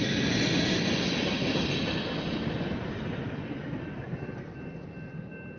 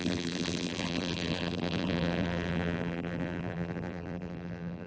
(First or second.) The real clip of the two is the first